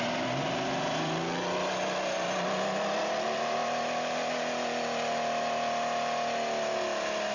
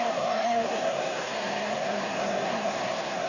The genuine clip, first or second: first